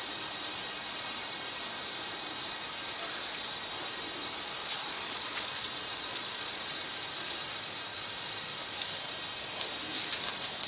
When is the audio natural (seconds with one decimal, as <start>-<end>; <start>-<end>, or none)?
0.0-4.6; 6.5-10.7